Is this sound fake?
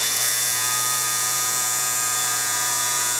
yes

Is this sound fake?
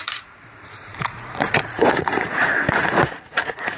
yes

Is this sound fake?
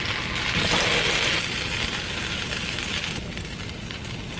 no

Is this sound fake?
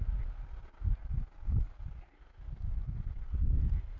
no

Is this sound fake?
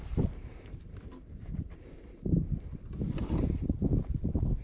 no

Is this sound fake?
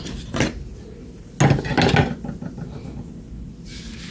no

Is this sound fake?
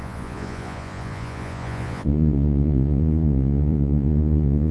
yes